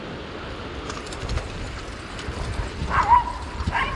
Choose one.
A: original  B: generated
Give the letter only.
A